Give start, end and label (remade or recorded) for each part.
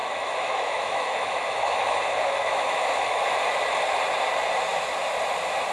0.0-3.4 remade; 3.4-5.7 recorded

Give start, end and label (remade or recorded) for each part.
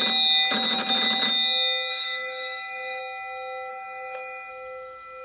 0.0-1.9 recorded; 1.9-3.0 remade; 3.0-3.7 recorded; 3.7-4.5 remade; 4.5-5.2 recorded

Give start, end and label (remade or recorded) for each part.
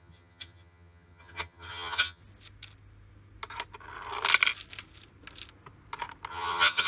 0.0-2.2 remade; 2.2-6.3 recorded; 6.3-6.9 remade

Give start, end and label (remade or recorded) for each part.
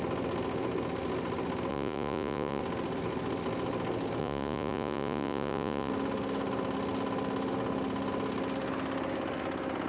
0.0-1.7 recorded; 1.7-2.6 remade; 2.6-4.2 recorded; 4.2-5.9 remade; 5.9-9.9 recorded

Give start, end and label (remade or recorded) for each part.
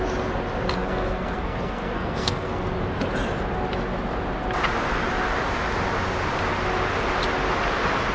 0.0-0.8 recorded; 0.8-2.7 remade; 2.7-8.1 recorded